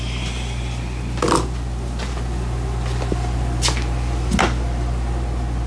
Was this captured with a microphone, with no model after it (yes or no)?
yes